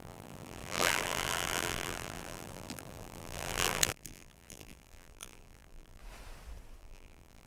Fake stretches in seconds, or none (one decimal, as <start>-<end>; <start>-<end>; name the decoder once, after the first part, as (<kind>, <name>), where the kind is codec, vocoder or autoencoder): 0.0-6.0 (vocoder, BigVGAN v2); 6.8-7.5